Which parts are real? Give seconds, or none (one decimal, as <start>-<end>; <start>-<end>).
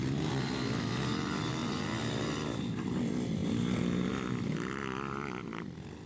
0.0-6.1